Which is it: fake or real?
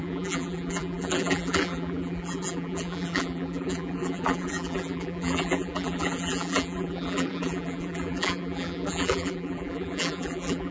fake